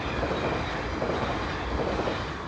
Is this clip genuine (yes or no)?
yes